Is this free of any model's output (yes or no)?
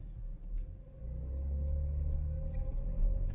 yes